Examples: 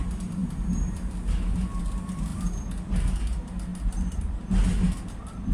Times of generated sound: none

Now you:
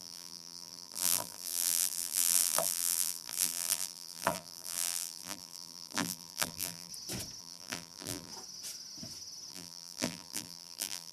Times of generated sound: 0.0-6.9 (vocoder, BigVGAN v2); 7.4-8.3; 9.5-11.1

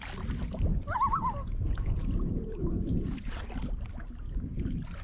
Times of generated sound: 1.1-3.4 (vocoder, Vocos)

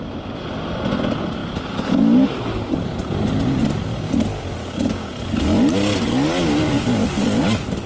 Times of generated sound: 4.6-5.1 (codec, DAC)

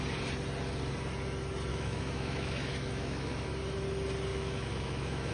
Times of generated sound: 1.7-3.5 (autoencoder, DAC-VAE); 4.3-5.3

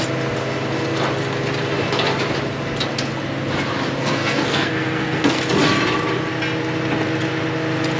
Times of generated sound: 4.0-5.4 (codec, SNAC)

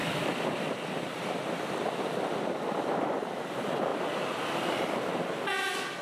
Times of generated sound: 0.0-3.1 (vocoder, BigVGAN v2); 3.9-4.5